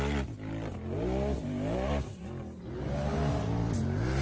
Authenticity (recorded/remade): recorded